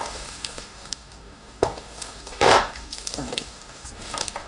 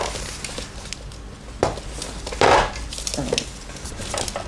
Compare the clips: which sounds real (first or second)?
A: second